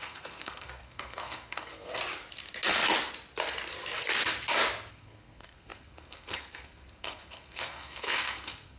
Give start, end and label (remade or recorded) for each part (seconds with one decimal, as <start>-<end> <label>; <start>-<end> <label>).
0.0-2.0 remade; 2.0-4.9 recorded; 4.9-8.8 remade